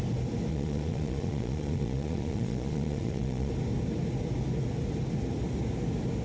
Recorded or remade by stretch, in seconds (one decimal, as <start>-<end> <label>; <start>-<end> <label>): 0.0-0.5 recorded; 0.5-3.5 remade; 3.5-6.2 recorded